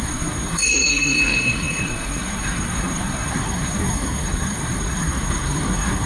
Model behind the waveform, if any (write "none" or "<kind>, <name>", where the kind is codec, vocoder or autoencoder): codec, SNAC